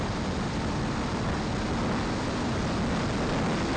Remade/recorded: recorded